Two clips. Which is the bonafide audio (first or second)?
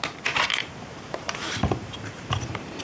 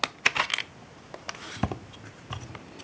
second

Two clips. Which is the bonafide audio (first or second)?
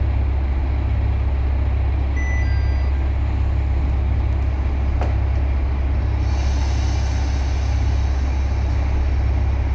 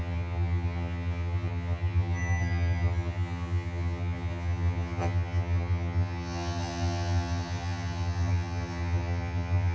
first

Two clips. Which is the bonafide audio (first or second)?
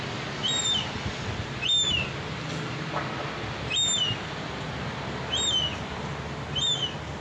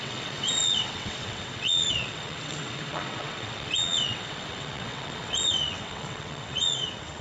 first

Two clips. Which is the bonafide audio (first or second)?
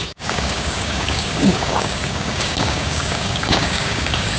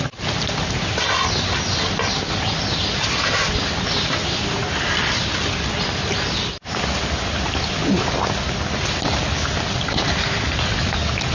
second